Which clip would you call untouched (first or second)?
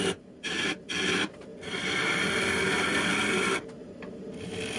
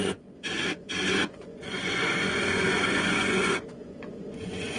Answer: first